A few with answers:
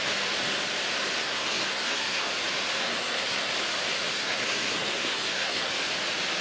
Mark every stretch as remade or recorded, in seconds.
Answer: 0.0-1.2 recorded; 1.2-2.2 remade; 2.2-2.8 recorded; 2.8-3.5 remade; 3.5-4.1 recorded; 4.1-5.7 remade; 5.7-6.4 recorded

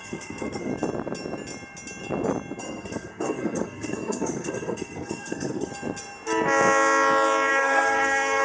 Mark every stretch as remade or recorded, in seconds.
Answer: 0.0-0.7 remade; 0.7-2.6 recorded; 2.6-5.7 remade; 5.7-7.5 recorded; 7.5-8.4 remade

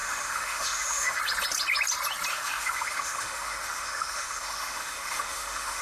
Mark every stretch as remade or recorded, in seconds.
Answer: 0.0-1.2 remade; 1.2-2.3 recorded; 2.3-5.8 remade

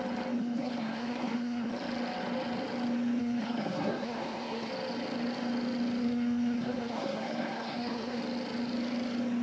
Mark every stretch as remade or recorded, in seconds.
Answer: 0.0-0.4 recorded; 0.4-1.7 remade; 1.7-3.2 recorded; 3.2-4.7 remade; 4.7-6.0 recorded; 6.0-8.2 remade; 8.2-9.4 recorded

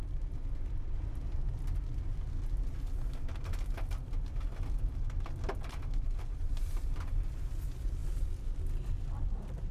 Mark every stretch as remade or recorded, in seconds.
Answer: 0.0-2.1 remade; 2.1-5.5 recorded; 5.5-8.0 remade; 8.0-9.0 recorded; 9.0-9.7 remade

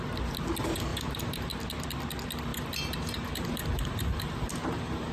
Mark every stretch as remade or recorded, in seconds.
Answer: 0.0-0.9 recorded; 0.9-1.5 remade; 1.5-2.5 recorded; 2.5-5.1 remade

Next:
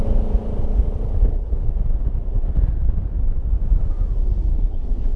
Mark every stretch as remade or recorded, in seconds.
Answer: 0.0-1.1 recorded; 1.1-1.7 remade; 1.7-4.5 recorded; 4.5-5.2 remade

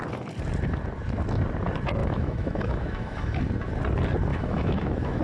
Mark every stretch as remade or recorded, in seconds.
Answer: 0.0-2.0 recorded; 2.0-3.4 remade; 3.4-4.3 recorded; 4.3-5.2 remade